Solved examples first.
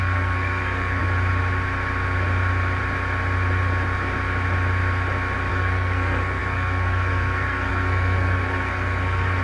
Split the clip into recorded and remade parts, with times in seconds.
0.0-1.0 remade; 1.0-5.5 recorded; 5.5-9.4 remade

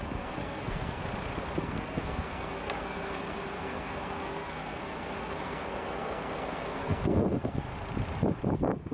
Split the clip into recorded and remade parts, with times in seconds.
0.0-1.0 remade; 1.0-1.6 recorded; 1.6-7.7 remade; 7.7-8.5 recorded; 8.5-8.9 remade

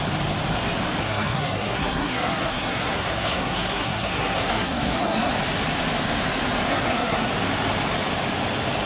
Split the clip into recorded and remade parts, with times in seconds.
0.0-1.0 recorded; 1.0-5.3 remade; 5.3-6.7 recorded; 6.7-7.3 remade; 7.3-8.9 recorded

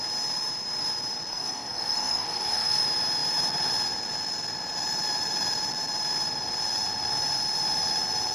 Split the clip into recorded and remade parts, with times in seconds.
0.0-1.3 recorded; 1.3-2.8 remade; 2.8-8.3 recorded